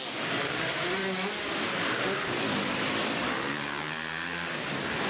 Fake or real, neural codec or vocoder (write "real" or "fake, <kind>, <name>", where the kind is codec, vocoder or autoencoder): real